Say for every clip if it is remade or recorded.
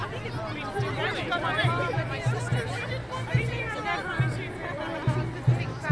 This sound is recorded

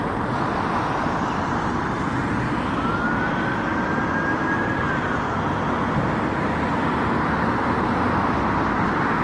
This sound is recorded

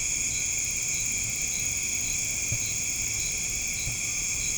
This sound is recorded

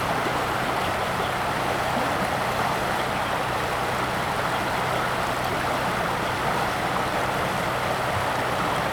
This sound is recorded